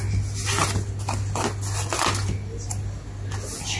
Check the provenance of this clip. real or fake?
real